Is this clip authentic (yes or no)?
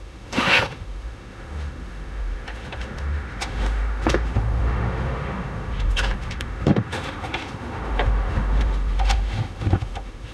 no